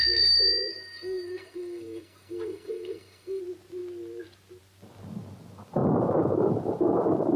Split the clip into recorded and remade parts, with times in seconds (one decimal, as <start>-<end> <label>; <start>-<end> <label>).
0.0-0.7 recorded; 0.7-3.4 remade; 3.4-7.4 recorded